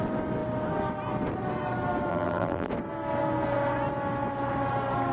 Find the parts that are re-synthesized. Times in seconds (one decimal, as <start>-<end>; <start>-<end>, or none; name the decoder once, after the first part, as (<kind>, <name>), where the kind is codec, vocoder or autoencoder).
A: 2.1-2.7 (vocoder, BigVGAN v2)